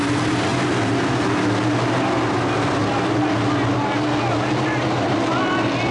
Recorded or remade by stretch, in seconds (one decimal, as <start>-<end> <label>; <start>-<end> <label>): 0.0-5.9 recorded